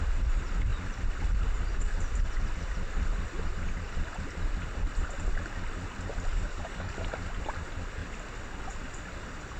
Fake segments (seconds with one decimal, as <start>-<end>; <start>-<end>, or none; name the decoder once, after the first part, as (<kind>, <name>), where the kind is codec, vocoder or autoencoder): 6.3-6.9 (codec, DAC)